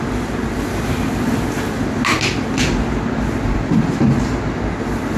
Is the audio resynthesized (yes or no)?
no